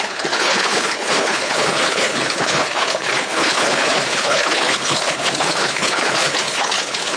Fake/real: fake